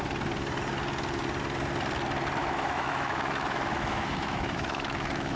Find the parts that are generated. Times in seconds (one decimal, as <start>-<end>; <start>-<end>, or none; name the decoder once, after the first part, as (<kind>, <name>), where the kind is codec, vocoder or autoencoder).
2.4-5.4 (autoencoder, DAC-VAE)